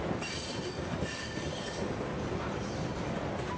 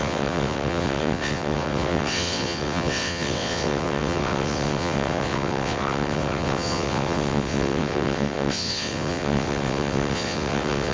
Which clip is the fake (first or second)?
second